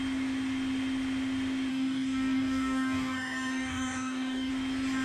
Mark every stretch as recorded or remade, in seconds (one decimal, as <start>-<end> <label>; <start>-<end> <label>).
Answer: 0.0-1.7 recorded; 1.7-4.5 remade; 4.5-5.0 recorded